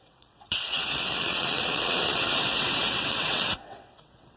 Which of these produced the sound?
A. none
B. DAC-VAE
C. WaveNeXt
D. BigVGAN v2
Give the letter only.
C